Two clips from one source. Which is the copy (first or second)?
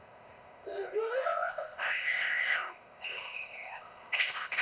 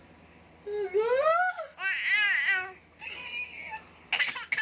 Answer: first